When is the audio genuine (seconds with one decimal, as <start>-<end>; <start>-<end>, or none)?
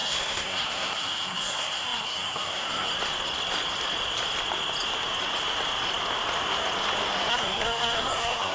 2.9-7.3